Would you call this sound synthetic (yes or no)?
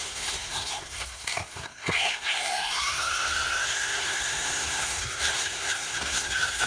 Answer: yes